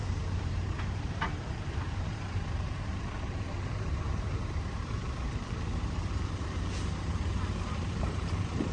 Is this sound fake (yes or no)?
yes